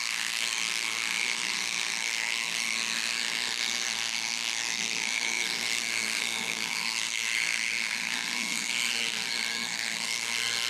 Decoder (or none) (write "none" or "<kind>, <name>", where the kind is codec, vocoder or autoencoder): codec, SNAC